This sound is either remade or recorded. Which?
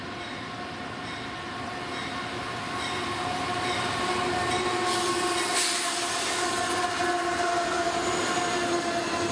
recorded